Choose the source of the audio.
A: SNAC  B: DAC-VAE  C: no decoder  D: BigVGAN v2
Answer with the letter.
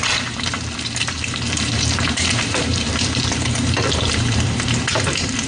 D